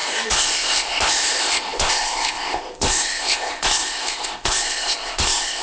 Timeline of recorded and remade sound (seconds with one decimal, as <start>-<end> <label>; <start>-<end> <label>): 0.0-5.6 remade